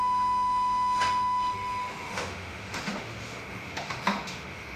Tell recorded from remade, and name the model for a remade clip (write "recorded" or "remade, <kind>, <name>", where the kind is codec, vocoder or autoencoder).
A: remade, autoencoder, DAC-VAE